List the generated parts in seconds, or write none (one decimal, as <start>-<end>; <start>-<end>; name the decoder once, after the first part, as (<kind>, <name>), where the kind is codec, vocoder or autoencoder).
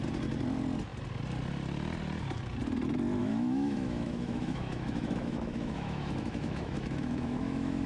3.2-7.9 (autoencoder, DAC-VAE)